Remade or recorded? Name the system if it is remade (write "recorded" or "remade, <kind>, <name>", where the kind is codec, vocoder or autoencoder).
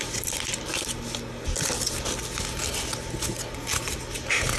recorded